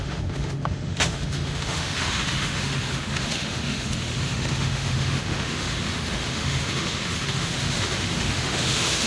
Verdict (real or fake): fake